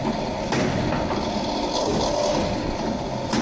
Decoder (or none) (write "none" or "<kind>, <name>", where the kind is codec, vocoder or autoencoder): none